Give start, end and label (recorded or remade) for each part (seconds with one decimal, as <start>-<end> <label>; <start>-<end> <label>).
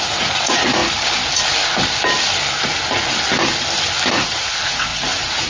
0.0-0.8 remade; 0.8-4.1 recorded; 4.1-5.5 remade